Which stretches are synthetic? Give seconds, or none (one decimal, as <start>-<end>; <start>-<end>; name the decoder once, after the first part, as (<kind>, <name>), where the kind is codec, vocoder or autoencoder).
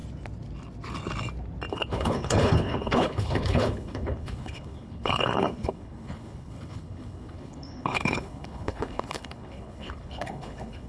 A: 1.7-10.9 (codec, HILCodec)